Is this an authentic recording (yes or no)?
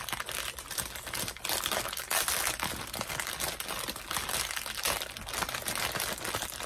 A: yes